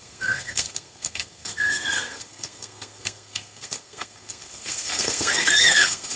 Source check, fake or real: fake